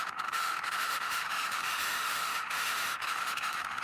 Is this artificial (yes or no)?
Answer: yes